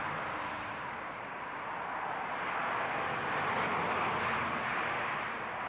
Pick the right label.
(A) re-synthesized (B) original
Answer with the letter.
B